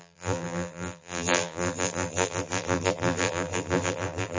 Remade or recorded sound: remade